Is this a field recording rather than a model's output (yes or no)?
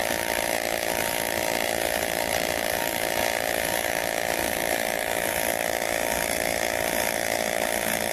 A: no